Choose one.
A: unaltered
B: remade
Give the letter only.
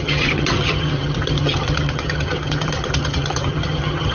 B